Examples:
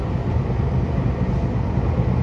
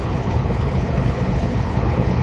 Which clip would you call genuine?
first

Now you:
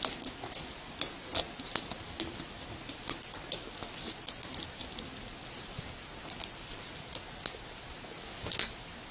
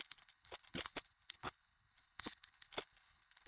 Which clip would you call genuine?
first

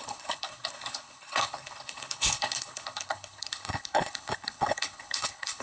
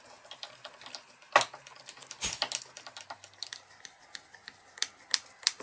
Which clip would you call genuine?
second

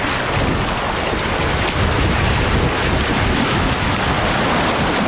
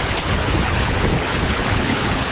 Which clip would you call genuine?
first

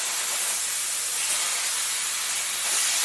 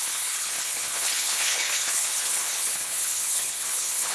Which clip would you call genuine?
first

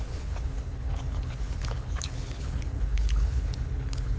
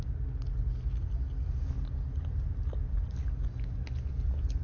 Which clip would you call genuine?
second